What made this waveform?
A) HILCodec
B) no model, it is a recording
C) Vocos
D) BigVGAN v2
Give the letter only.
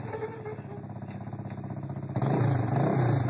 B